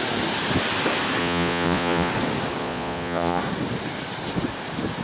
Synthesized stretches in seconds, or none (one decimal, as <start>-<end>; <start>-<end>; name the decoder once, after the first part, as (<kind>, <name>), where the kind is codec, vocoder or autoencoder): 1.2-2.1 (vocoder, Vocos); 2.6-3.4